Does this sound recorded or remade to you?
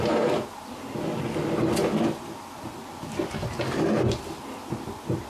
recorded